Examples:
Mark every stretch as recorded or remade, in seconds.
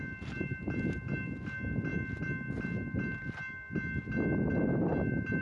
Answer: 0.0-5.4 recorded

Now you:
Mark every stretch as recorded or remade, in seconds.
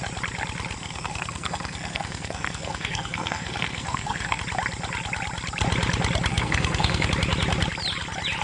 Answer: 0.0-0.8 recorded; 0.8-4.4 remade; 4.4-6.3 recorded; 6.3-7.1 remade; 7.1-8.4 recorded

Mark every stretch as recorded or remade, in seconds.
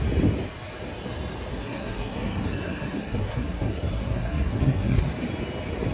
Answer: 0.0-1.5 recorded; 1.5-5.0 remade; 5.0-5.9 recorded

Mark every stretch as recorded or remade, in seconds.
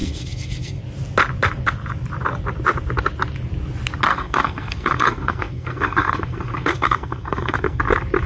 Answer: 0.0-0.8 remade; 0.8-4.1 recorded; 4.1-7.8 remade; 7.8-8.3 recorded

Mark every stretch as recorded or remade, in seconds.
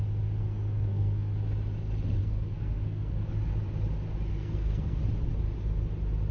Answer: 0.0-0.4 recorded; 0.4-1.3 remade; 1.3-2.2 recorded; 2.2-3.3 remade; 3.3-4.3 recorded; 4.3-5.0 remade; 5.0-6.3 recorded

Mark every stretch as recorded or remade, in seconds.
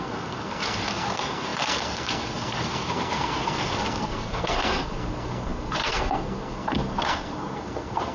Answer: 0.0-8.1 remade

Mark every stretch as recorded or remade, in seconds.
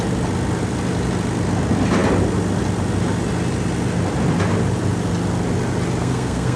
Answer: 0.0-6.0 recorded; 6.0-6.6 remade